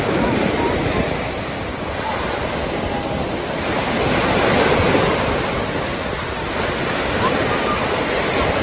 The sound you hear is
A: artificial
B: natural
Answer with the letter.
B